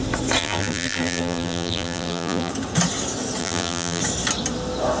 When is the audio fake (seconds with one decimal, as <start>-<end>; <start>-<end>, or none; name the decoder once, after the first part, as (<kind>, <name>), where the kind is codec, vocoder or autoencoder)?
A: 0.4-2.5 (vocoder, BigVGAN v2); 3.4-4.0